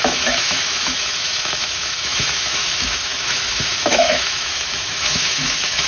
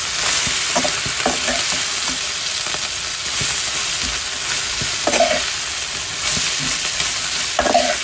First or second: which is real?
second